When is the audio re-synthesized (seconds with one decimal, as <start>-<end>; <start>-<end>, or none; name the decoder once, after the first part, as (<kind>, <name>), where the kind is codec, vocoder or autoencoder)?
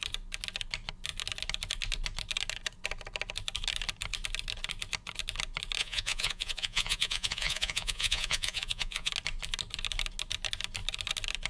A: 5.8-9.1 (vocoder, Vocos)